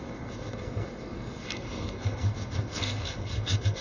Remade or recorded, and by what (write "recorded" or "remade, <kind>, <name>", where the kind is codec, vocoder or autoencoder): remade, codec, SNAC